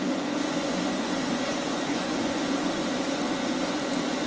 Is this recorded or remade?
remade